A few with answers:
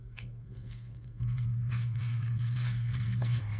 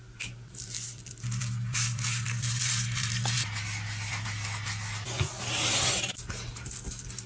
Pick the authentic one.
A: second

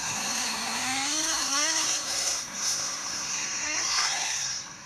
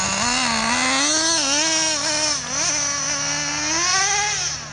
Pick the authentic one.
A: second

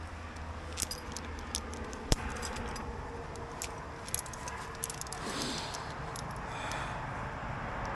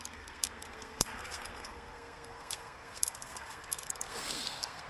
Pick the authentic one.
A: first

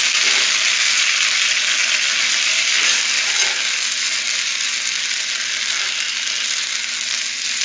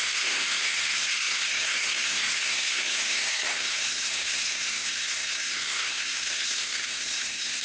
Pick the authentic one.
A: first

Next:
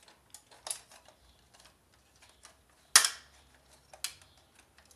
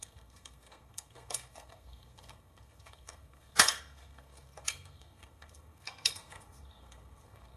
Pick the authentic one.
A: first